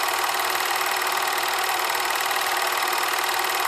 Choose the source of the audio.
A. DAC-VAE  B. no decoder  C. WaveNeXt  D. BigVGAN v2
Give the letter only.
B